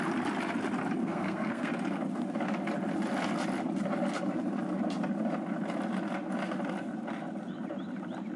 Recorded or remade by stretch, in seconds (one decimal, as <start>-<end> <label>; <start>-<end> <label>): 0.0-1.0 recorded; 1.0-1.7 remade; 1.7-8.4 recorded